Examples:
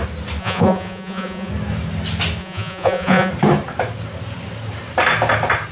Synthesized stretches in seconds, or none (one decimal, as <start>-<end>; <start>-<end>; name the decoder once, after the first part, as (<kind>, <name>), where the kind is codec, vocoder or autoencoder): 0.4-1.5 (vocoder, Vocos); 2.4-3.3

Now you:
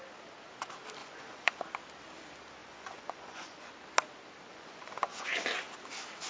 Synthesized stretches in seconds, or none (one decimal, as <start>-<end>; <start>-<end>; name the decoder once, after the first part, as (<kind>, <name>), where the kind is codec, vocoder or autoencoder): 1.0-1.6 (vocoder, Vocos); 2.6-3.7; 4.5-5.3

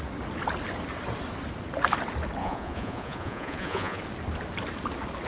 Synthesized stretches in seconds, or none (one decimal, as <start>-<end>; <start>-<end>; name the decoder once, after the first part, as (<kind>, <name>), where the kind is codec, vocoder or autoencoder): 2.4-4.0 (vocoder, Vocos)

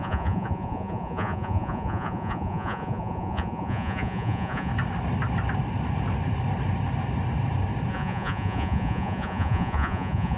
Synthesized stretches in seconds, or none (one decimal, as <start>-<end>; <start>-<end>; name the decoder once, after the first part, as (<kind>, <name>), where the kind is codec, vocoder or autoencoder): 0.0-4.7 (vocoder, Vocos); 7.9-10.4